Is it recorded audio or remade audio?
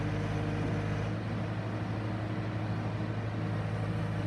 recorded